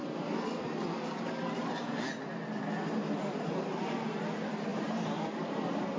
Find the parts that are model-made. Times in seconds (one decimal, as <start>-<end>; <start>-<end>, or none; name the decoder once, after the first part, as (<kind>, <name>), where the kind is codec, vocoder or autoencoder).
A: 4.7-5.6 (vocoder, BigVGAN v2)